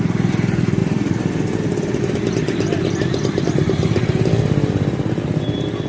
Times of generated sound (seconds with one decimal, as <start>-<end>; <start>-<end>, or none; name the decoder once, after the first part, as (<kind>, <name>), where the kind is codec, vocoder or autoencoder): 0.8-3.4 (vocoder, BigVGAN v2)